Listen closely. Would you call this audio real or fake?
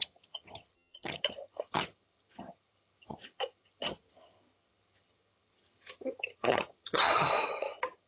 fake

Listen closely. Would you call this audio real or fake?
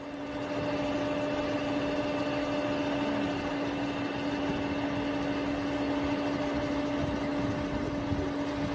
real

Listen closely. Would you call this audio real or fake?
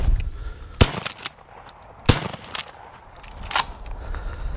real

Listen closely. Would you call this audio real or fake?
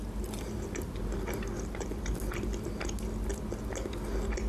real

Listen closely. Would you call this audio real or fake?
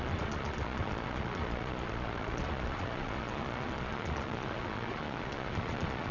fake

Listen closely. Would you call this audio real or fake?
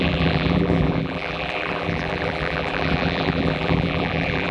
fake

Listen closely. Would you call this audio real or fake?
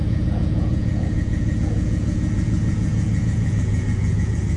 fake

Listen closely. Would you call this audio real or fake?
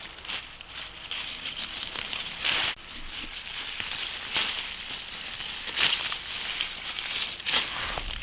real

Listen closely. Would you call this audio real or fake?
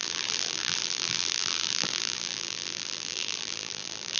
fake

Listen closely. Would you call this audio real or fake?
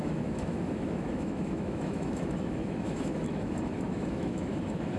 fake